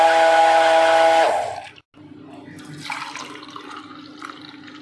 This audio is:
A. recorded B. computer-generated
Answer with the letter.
A